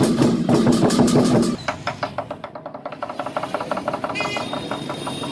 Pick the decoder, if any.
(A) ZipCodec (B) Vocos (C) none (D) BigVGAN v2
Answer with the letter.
C